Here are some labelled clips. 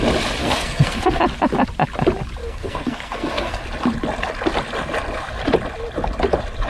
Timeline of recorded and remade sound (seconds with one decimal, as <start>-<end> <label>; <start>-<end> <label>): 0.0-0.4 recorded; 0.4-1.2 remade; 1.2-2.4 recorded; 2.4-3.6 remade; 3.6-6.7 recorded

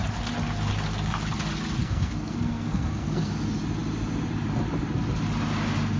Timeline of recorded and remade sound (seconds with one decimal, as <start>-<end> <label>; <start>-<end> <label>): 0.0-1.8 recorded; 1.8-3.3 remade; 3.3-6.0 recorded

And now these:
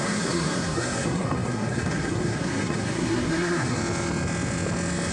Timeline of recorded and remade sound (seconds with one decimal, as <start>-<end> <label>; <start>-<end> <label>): 0.0-3.8 remade; 3.8-5.1 recorded